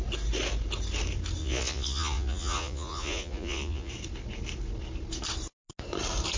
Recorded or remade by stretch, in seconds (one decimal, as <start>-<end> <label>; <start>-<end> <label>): 0.0-1.4 recorded; 1.4-3.9 remade; 3.9-6.4 recorded